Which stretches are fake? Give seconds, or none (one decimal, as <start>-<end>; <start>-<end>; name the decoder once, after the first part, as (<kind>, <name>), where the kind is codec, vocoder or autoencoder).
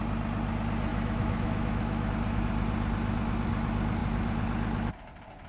0.9-2.1 (autoencoder, DAC-VAE)